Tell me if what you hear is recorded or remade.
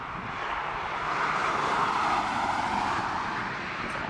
remade